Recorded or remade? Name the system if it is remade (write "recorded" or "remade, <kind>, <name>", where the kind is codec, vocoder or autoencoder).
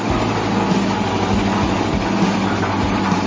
recorded